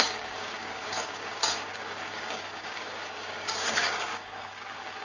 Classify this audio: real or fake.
fake